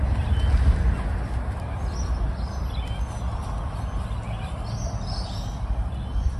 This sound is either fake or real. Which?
real